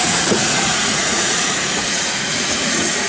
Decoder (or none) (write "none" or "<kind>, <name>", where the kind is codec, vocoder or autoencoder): vocoder, Vocos